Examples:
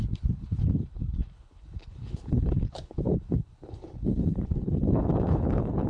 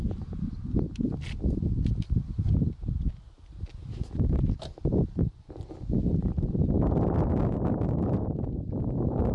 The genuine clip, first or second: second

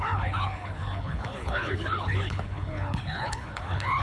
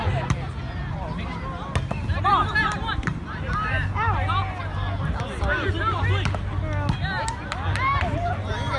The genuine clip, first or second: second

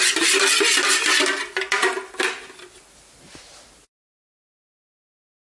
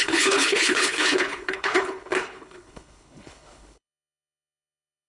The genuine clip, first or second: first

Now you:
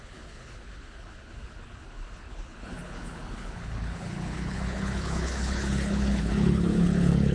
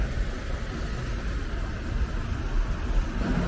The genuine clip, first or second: second